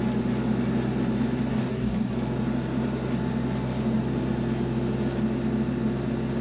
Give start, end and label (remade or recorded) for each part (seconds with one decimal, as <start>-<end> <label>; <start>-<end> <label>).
0.0-1.5 recorded; 1.5-2.1 remade; 2.1-6.4 recorded